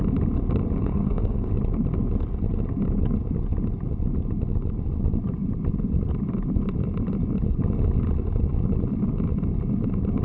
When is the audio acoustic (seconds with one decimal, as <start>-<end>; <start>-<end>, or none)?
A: 0.0-0.8; 1.5-10.2